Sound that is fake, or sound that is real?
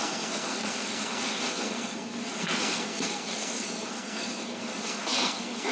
fake